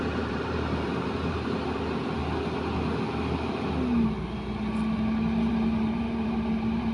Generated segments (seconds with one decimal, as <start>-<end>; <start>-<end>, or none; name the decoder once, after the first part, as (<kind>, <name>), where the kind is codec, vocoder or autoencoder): 0.0-2.2 (vocoder, BigVGAN v2); 5.5-6.9